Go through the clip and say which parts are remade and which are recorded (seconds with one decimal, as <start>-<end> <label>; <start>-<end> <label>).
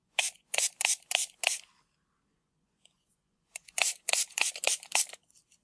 0.0-0.7 remade; 0.7-2.3 recorded; 2.3-4.5 remade; 4.5-5.6 recorded